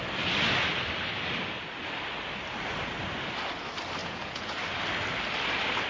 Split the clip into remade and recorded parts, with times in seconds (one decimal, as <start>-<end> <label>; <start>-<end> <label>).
0.0-4.0 recorded; 4.0-4.6 remade; 4.6-5.9 recorded